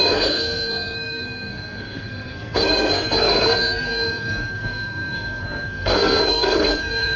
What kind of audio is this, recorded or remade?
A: remade